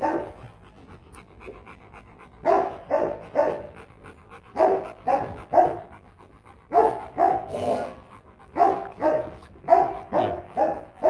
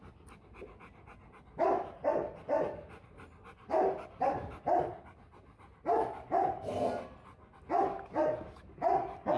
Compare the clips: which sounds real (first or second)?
second